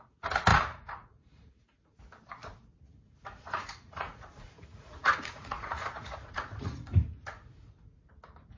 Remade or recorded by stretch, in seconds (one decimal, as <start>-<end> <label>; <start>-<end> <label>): 0.0-0.5 recorded; 0.5-2.0 remade; 2.0-2.9 recorded; 2.9-8.1 remade; 8.1-8.6 recorded